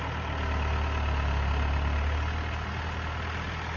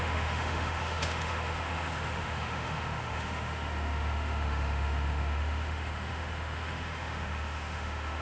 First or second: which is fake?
second